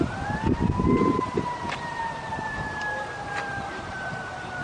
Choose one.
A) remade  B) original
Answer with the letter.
A